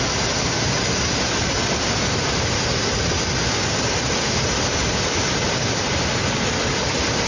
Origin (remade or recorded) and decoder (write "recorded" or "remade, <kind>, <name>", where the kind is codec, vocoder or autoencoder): recorded